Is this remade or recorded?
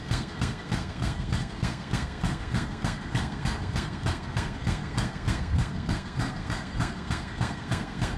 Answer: remade